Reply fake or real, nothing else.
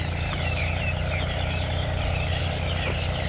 real